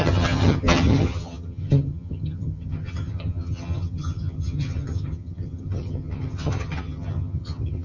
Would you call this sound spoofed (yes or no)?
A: yes